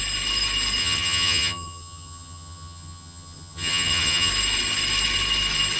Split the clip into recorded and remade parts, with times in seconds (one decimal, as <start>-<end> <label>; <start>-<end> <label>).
0.0-0.8 recorded; 0.8-4.3 remade; 4.3-5.8 recorded